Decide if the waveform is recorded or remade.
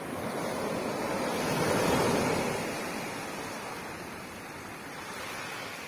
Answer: recorded